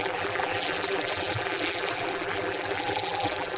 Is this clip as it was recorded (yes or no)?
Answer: no